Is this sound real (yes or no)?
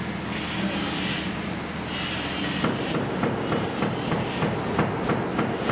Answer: yes